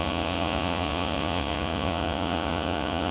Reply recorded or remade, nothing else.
remade